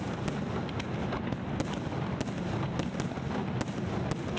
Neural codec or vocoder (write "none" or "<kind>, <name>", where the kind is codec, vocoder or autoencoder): none